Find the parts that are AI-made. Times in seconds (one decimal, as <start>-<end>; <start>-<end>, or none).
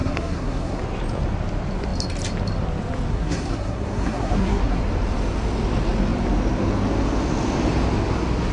0.0-0.8; 3.1-4.8